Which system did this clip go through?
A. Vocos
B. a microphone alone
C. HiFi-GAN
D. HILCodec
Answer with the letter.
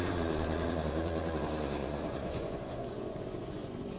A